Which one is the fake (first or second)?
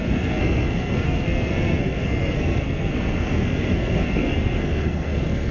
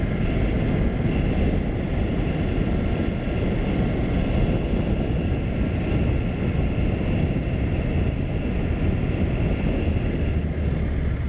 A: first